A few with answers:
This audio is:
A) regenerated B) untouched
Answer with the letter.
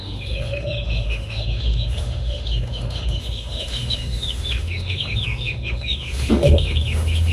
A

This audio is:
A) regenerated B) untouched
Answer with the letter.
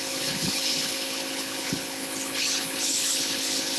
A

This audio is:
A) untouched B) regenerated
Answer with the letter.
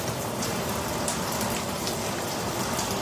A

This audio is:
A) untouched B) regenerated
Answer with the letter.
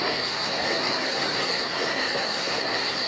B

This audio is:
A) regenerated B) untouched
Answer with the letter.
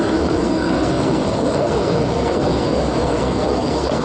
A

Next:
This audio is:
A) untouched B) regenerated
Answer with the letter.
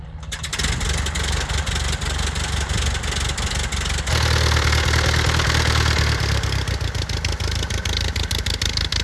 A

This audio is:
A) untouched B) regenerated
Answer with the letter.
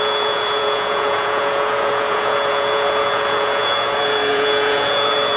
B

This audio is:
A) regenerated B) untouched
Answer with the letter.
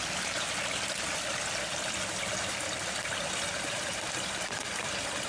B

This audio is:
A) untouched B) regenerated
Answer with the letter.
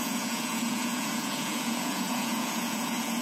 B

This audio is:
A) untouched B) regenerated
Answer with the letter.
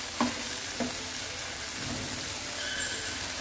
A